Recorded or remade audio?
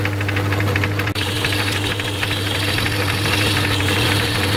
recorded